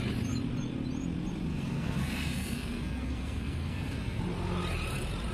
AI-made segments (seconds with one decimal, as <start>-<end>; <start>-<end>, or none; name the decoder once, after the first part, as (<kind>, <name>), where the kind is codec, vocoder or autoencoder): 1.5-4.2 (codec, SNAC)